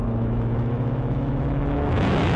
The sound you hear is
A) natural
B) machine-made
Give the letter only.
B